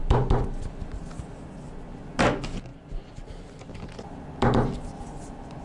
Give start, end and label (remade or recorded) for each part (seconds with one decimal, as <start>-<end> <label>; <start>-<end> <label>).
0.0-5.6 recorded